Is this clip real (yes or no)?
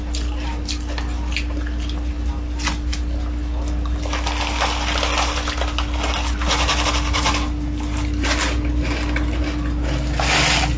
yes